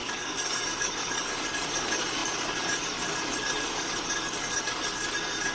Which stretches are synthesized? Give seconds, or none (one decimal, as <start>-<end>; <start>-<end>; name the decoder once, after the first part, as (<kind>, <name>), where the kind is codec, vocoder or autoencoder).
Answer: 0.0-5.5 (codec, DAC)